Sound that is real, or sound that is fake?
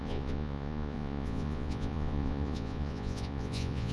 fake